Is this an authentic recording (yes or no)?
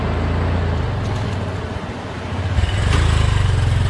yes